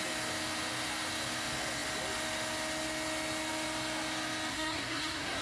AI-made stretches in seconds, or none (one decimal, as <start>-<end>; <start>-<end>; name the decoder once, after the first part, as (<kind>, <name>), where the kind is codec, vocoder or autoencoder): 4.5-5.4 (codec, SNAC)